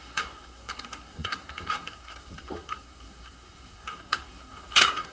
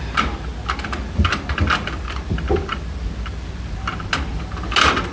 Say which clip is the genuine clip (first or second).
second